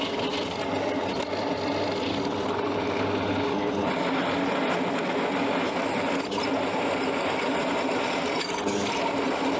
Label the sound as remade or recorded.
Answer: recorded